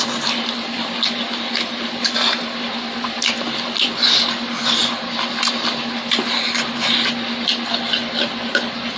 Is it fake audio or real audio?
real